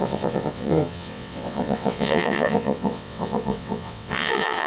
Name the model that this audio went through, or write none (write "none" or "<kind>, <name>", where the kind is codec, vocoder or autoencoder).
vocoder, WaveNeXt